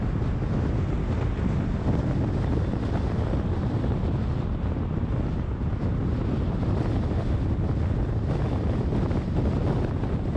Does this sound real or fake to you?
real